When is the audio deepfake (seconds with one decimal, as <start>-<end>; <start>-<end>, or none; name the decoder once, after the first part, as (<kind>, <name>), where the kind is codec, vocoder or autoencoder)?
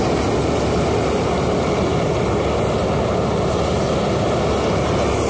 none